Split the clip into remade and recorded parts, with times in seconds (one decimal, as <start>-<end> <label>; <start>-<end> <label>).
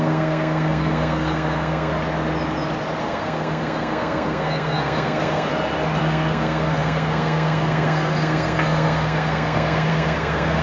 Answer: 0.0-1.9 remade; 1.9-3.0 recorded; 3.0-5.5 remade; 5.5-6.0 recorded; 6.0-10.6 remade